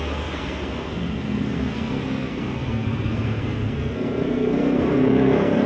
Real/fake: fake